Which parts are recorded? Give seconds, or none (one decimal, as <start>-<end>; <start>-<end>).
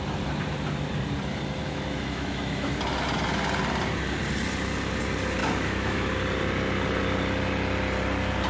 0.0-1.6; 2.8-5.4; 6.1-8.5